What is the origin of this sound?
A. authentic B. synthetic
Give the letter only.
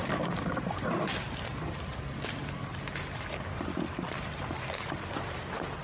A